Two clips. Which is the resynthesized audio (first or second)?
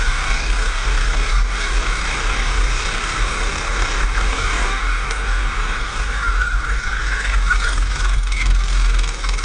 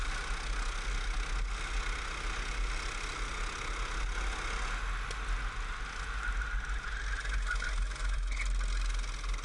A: first